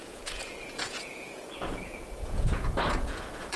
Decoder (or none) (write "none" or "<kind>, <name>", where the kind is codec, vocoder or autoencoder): vocoder, Vocos